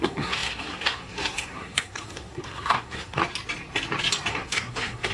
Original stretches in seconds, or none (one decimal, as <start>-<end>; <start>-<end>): 3.2-4.3